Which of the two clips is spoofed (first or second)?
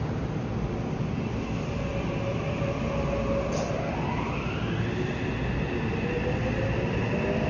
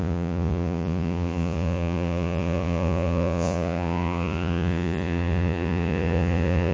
second